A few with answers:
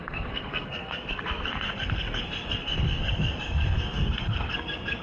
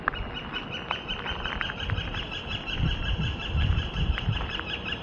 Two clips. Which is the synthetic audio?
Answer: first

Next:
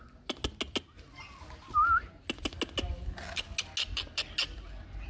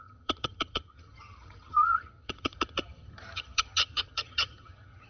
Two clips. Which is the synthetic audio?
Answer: second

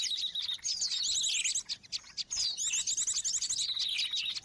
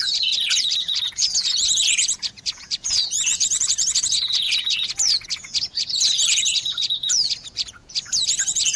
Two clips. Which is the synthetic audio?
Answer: second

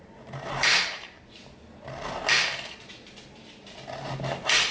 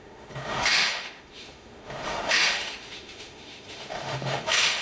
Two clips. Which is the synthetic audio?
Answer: second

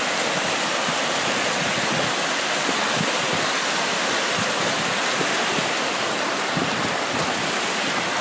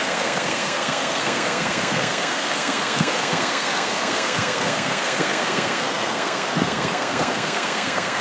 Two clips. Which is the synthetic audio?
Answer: second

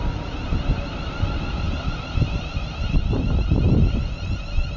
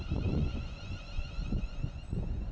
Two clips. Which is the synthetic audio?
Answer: second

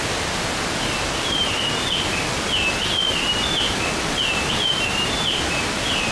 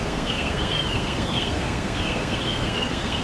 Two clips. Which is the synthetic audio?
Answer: second